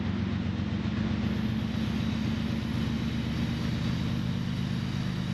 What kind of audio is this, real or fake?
real